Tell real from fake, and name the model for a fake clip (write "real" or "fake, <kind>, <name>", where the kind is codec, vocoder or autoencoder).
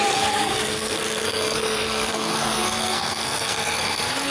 fake, codec, SNAC